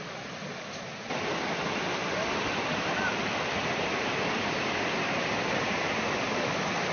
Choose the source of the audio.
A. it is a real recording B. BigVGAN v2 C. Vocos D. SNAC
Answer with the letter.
A